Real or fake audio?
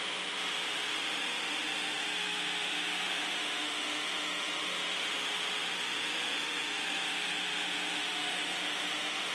fake